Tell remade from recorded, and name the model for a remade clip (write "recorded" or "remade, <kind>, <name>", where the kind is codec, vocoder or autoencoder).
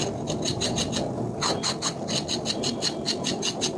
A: recorded